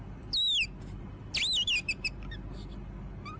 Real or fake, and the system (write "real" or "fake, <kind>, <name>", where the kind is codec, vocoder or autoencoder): real